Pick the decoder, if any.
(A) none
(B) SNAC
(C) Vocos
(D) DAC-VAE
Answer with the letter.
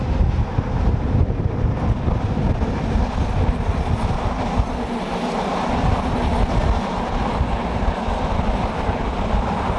A